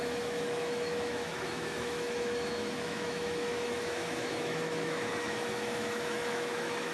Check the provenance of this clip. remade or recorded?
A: remade